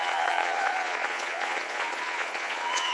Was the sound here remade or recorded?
remade